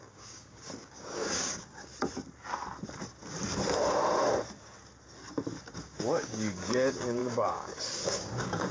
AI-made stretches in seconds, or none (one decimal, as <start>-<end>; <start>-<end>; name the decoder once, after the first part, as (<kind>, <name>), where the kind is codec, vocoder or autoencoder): 0.0-1.9 (codec, DAC); 5.7-8.7